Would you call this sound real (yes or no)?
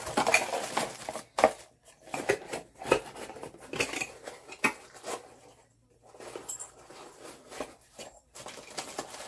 yes